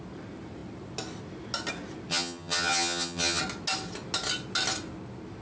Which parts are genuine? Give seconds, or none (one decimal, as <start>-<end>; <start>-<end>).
0.0-2.1; 3.4-5.4